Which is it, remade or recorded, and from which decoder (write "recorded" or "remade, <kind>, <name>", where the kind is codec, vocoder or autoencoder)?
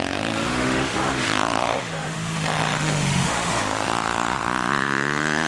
remade, autoencoder, DAC-VAE